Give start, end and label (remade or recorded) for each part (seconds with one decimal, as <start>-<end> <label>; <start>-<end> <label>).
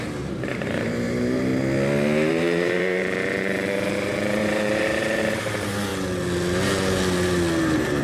0.0-1.5 remade; 1.5-2.3 recorded; 2.3-5.9 remade; 5.9-7.6 recorded; 7.6-8.0 remade